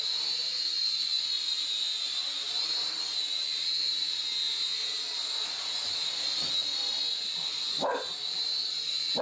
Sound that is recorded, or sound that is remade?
recorded